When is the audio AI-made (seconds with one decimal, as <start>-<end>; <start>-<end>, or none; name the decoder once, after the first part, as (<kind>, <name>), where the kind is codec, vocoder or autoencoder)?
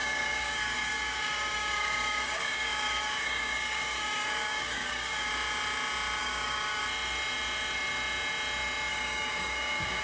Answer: 0.0-5.3 (codec, DAC); 6.2-6.8; 8.9-10.0